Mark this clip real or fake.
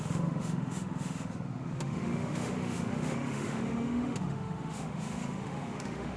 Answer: fake